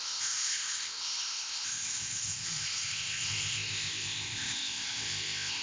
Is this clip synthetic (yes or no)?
yes